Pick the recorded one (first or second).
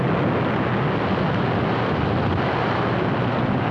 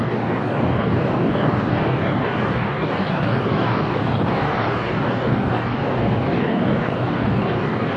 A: first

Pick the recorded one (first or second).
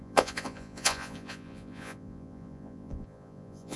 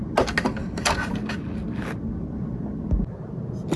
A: second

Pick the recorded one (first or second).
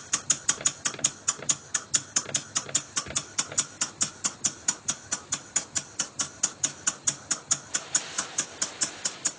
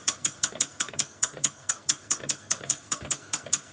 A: first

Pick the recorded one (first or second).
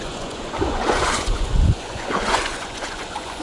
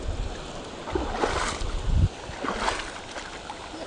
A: second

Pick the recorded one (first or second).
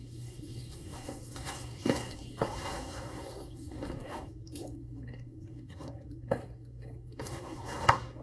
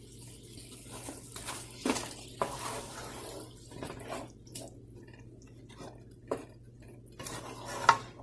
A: second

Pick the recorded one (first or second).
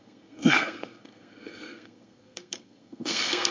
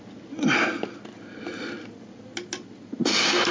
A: second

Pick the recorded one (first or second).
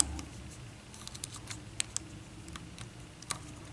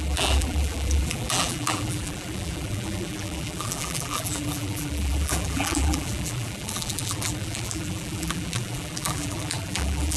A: first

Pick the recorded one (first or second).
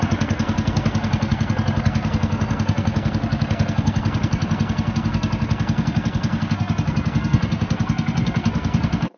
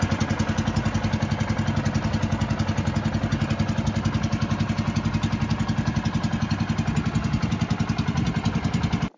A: second